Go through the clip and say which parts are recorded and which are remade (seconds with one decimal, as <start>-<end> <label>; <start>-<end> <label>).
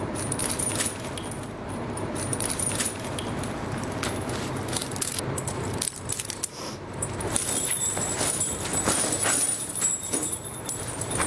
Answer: 0.0-11.3 remade